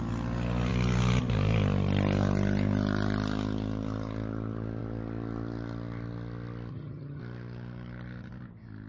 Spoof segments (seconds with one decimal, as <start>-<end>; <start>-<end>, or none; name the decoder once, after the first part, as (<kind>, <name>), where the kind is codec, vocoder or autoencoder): 6.7-7.2 (vocoder, HiFi-GAN)